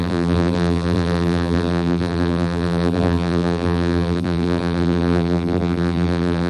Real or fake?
fake